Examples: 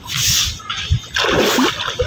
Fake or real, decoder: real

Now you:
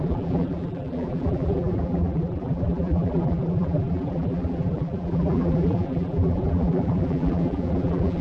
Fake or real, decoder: fake, vocoder, BigVGAN v2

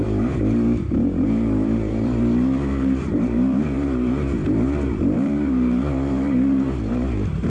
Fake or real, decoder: fake, vocoder, BigVGAN v2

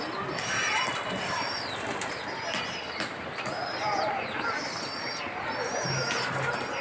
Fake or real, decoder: real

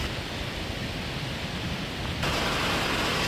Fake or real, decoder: real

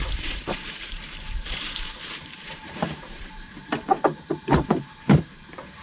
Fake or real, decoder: fake, vocoder, BigVGAN v2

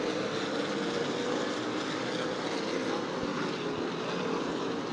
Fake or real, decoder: real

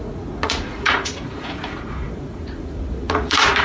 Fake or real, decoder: fake, vocoder, Vocos